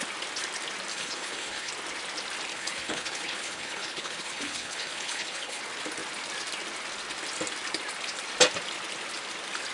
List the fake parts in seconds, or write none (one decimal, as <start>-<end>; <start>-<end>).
0.9-1.7; 2.5-5.6